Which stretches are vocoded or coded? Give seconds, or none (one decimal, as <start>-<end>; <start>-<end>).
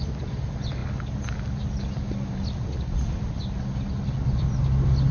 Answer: none